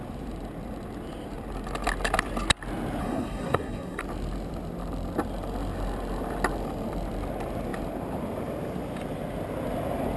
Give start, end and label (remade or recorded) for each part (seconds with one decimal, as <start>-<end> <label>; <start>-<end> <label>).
0.0-3.0 recorded; 3.0-4.0 remade; 4.0-10.2 recorded